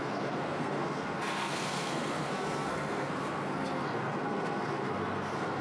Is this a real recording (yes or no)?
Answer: no